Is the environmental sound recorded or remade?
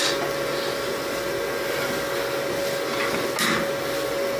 recorded